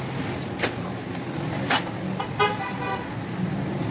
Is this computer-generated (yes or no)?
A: no